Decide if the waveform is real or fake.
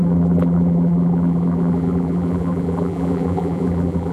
fake